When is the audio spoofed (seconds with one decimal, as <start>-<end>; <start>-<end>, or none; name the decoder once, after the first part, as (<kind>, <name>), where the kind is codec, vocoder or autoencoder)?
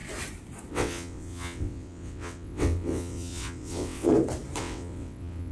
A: 0.7-4.1 (vocoder, WaveNeXt); 4.6-5.5